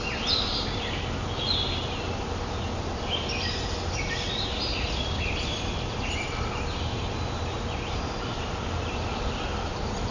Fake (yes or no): no